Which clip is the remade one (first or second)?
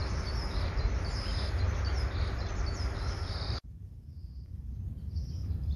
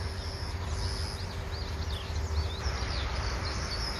first